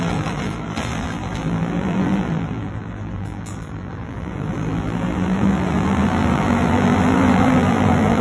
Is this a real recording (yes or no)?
no